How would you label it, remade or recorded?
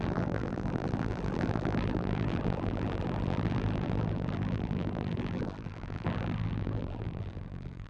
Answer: remade